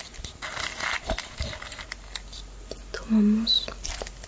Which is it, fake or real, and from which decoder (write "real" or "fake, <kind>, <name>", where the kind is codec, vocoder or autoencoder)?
real